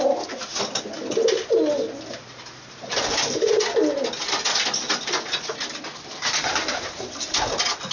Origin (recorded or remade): recorded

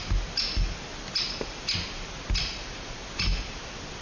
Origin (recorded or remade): recorded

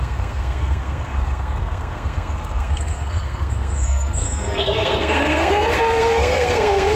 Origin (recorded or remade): remade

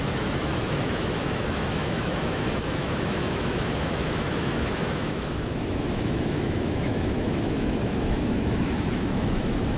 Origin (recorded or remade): remade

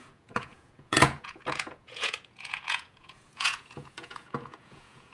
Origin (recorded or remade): remade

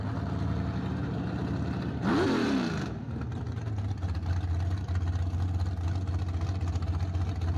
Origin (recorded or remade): recorded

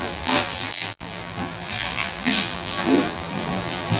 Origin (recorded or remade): remade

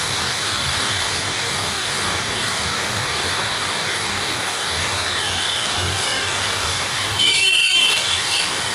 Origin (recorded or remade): remade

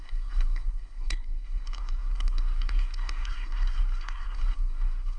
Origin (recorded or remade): remade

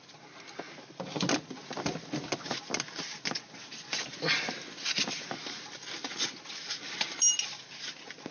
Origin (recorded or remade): recorded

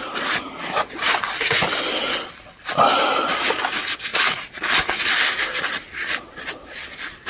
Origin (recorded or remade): recorded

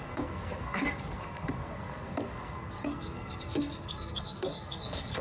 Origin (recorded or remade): remade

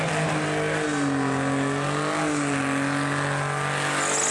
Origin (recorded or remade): recorded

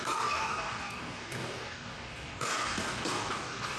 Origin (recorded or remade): remade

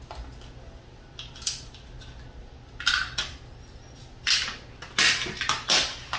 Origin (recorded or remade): recorded